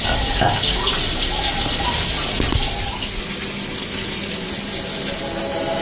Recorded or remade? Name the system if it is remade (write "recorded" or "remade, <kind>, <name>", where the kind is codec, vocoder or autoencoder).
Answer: recorded